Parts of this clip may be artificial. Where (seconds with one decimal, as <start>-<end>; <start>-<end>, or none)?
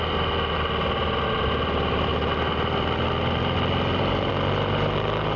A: none